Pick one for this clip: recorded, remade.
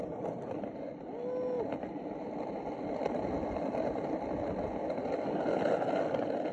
recorded